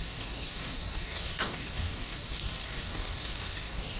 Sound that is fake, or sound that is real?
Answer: fake